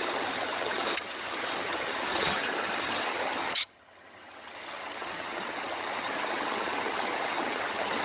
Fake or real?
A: fake